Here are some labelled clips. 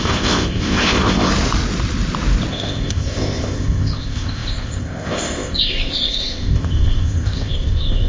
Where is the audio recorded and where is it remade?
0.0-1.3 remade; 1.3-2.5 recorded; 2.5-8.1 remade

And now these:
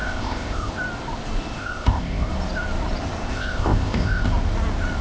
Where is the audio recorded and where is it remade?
0.0-0.7 remade; 0.7-1.6 recorded; 1.6-2.3 remade; 2.3-3.3 recorded; 3.3-4.3 remade; 4.3-5.0 recorded

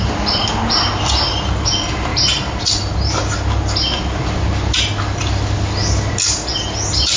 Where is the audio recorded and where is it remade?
0.0-7.2 recorded

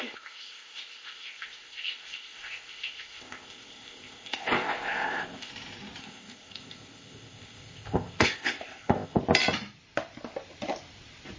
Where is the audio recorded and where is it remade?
0.0-5.5 remade; 5.5-6.0 recorded; 6.0-9.2 remade; 9.2-11.4 recorded

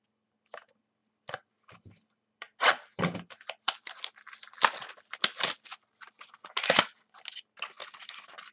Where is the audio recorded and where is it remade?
0.0-8.5 recorded

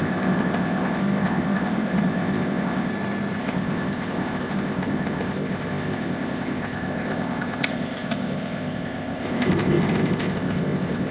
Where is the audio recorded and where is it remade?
0.0-2.9 remade; 2.9-3.4 recorded; 3.4-11.1 remade

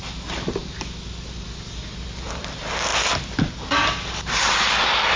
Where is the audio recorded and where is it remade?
0.0-5.2 recorded

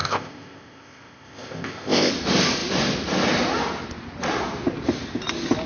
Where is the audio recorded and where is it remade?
0.0-2.1 remade; 2.1-5.7 recorded